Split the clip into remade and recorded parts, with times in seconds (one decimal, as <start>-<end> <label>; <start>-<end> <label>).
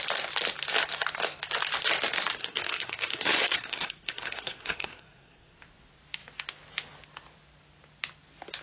0.0-2.4 recorded; 2.4-5.6 remade; 5.6-8.6 recorded